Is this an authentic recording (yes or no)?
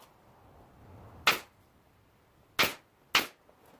yes